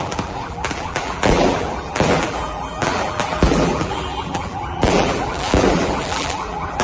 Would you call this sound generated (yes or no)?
yes